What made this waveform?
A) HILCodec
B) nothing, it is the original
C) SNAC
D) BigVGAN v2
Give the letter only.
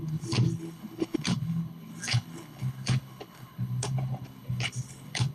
A